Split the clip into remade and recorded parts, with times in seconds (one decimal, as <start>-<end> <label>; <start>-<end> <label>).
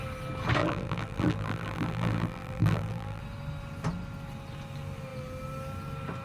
0.0-0.6 recorded; 0.6-3.2 remade; 3.2-6.2 recorded